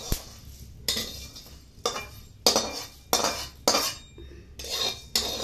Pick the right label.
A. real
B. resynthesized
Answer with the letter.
A